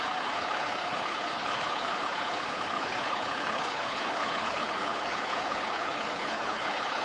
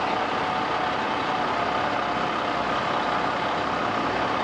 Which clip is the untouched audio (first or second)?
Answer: second